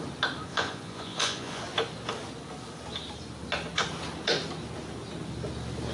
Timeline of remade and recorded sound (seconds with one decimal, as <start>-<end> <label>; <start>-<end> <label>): 0.0-0.5 recorded; 0.5-1.6 remade; 1.6-5.9 recorded